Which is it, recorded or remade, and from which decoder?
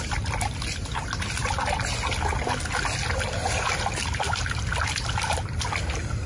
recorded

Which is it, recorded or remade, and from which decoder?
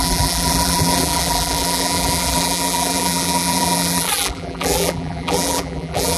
remade, vocoder, BigVGAN v2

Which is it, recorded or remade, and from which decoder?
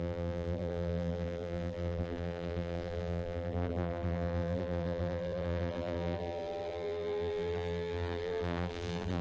remade, vocoder, BigVGAN v2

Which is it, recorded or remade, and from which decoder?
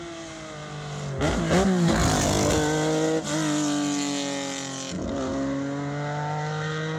recorded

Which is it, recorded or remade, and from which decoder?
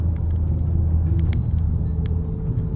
recorded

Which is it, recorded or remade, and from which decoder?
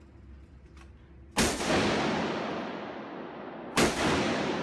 recorded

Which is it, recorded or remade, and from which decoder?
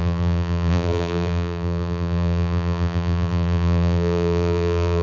remade, vocoder, BigVGAN v2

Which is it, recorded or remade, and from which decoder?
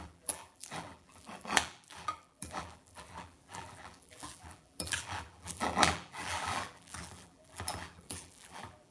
remade, vocoder, BigVGAN v2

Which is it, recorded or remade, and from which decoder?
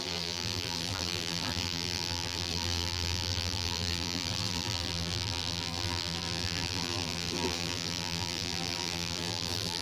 remade, vocoder, BigVGAN v2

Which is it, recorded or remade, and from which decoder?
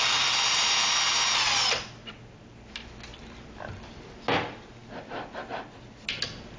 recorded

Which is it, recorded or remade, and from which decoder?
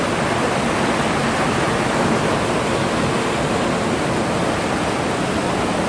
recorded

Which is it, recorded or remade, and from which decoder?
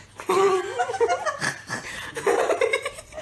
remade, vocoder, BigVGAN v2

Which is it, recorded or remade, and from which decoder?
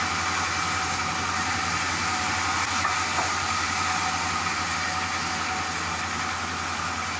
recorded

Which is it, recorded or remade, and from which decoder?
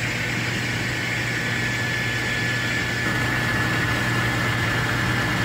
recorded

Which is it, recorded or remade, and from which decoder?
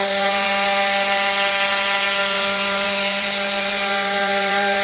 remade, vocoder, BigVGAN v2